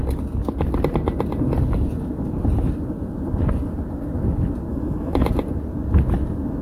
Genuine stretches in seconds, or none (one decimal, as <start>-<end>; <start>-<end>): 0.0-4.7; 5.3-6.6